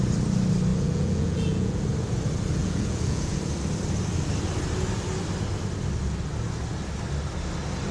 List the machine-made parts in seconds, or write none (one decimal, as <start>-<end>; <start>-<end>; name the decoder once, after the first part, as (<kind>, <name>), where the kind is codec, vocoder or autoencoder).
0.7-1.8 (vocoder, Vocos); 2.6-3.4